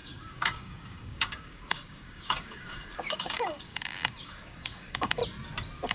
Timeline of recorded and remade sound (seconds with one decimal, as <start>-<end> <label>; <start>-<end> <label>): 0.0-5.2 remade; 5.2-5.9 recorded

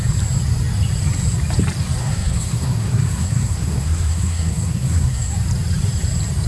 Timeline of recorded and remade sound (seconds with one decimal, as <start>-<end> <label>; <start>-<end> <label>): 0.0-2.0 recorded; 2.0-5.3 remade; 5.3-6.5 recorded

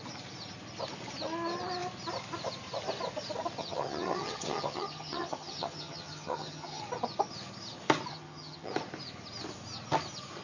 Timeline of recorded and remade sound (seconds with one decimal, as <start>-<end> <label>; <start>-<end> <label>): 0.0-3.6 recorded; 3.6-6.8 remade; 6.8-8.1 recorded; 8.1-8.7 remade; 8.7-10.4 recorded

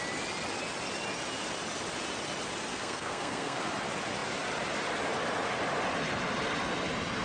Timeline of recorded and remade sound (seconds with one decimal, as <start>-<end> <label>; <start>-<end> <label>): 0.0-2.7 recorded; 2.7-3.6 remade; 3.6-7.2 recorded